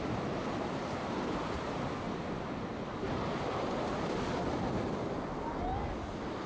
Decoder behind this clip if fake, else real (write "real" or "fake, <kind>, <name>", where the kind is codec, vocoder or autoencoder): real